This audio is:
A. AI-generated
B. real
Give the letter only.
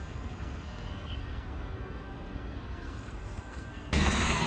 A